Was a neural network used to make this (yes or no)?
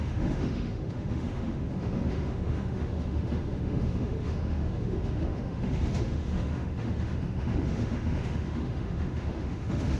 yes